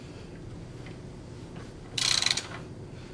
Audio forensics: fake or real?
real